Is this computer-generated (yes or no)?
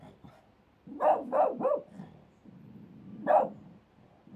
no